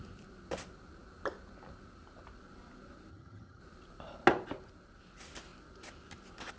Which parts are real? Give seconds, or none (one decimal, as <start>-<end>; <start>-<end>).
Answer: 0.0-3.1; 3.6-6.6